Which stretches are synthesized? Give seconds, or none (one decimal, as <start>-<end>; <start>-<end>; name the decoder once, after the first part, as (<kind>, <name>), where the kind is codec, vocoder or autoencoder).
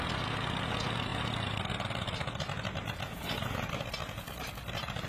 none